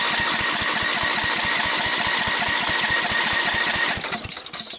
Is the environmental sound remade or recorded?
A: recorded